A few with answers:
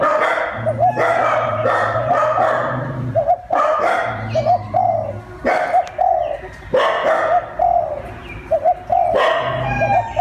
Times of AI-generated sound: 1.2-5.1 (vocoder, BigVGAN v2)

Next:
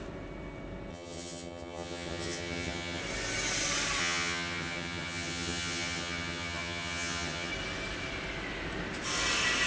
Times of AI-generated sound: 0.9-3.0 (vocoder, HiFi-GAN); 4.0-7.5

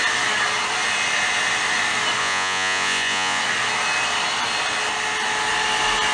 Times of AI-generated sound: 2.2-3.4 (vocoder, Vocos)

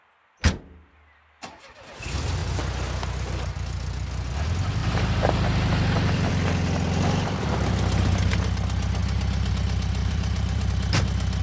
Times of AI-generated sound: 4.8-6.3 (vocoder, BigVGAN v2); 10.0-10.7

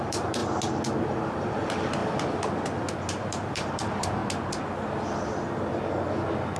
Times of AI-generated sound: 0.0-0.4 (vocoder, BigVGAN v2); 1.0-2.0; 3.1-4.2

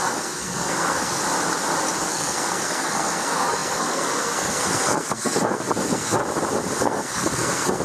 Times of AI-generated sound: 0.0-1.2 (codec, SNAC); 2.0-6.2; 6.8-7.8

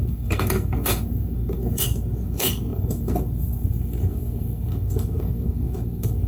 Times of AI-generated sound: 0.0-6.3 (codec, SNAC)